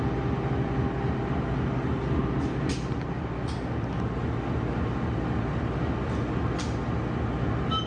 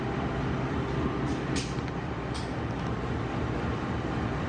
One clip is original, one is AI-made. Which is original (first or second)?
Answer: first